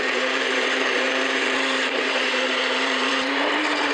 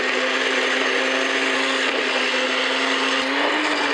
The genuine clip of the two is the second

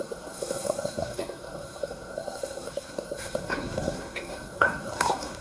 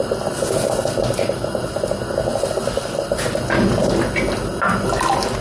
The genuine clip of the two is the second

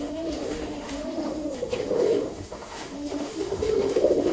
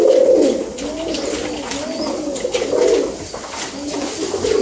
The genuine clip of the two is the second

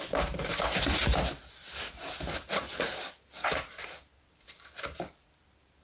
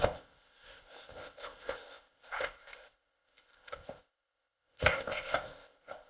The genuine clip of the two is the first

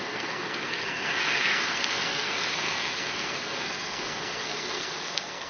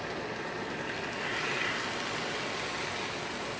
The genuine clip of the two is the second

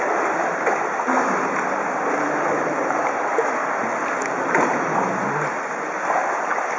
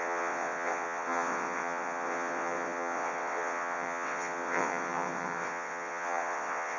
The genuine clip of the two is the first